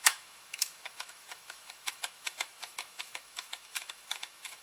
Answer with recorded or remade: remade